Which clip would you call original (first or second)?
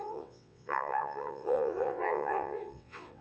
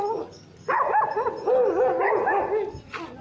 second